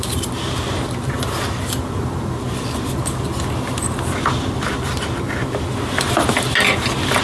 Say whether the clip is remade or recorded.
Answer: recorded